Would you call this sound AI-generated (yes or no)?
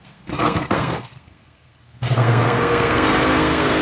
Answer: yes